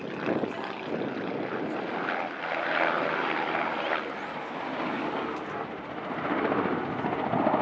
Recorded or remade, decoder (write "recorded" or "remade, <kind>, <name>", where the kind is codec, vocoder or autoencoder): recorded